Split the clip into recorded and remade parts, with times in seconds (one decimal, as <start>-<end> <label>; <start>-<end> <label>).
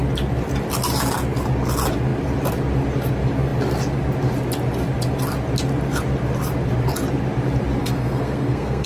0.0-7.8 recorded; 7.8-8.9 remade